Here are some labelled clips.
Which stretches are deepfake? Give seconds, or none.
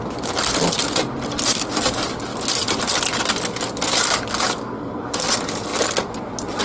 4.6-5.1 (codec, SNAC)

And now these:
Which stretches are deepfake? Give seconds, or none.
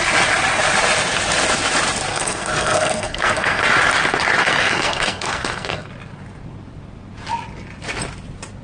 2.1-3.6 (codec, SNAC); 4.4-5.9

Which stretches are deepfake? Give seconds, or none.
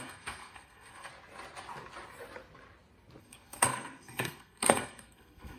0.0-1.1 (codec, SNAC); 3.2-5.6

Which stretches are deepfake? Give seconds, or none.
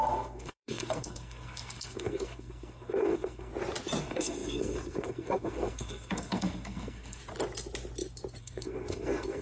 0.0-3.5 (codec, SNAC); 4.0-7.2; 8.4-9.4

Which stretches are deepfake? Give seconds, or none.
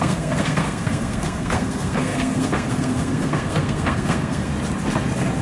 0.0-4.5 (codec, SNAC)